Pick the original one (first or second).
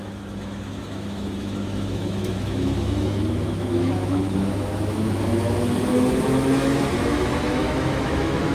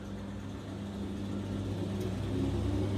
second